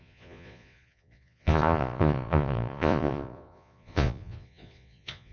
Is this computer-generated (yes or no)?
yes